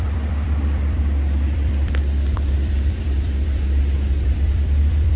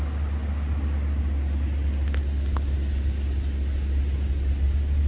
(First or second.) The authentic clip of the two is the second